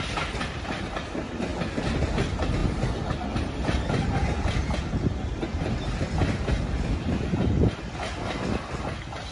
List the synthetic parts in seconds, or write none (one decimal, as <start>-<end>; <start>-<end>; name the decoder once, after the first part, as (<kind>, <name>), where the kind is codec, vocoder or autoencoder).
0.0-1.5 (vocoder, BigVGAN v2); 2.2-2.6; 5.6-9.3